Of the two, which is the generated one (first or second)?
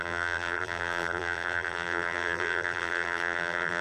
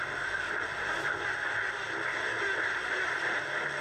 first